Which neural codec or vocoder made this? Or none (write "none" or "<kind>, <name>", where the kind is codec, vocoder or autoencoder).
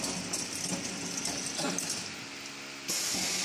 none